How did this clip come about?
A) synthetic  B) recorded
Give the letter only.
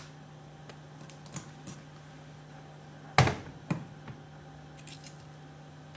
B